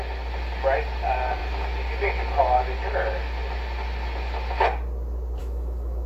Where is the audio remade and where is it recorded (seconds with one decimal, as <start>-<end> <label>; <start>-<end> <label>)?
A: 0.0-5.4 recorded; 5.4-6.1 remade